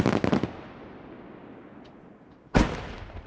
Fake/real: real